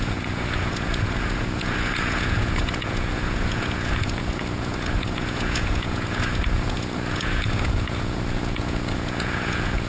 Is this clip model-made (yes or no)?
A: yes